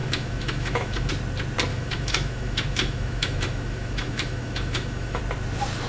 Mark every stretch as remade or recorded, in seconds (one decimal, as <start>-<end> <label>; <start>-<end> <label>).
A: 0.0-1.1 remade; 1.1-1.7 recorded; 1.7-5.2 remade; 5.2-5.9 recorded